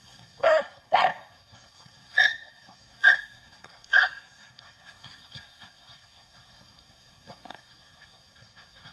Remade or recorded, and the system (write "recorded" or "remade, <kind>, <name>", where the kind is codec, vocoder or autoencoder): remade, codec, SNAC